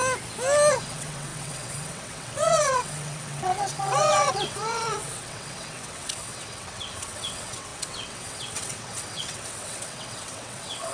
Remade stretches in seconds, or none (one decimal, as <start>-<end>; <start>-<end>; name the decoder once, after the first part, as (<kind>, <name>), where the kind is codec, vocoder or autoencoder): 0.7-10.9 (vocoder, WaveNeXt)